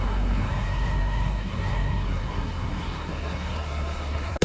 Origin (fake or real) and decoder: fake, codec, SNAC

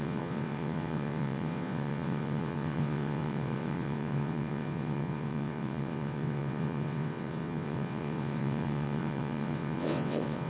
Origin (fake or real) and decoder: fake, vocoder, WaveNeXt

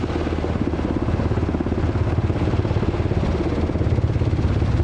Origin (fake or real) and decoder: real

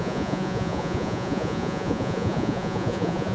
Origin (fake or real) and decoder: fake, vocoder, Vocos